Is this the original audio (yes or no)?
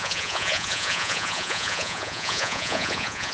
no